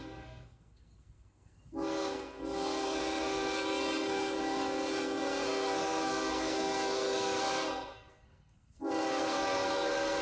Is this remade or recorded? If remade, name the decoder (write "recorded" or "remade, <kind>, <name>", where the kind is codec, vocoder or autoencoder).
remade, codec, SNAC